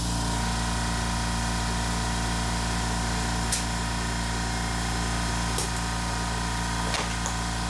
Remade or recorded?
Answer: recorded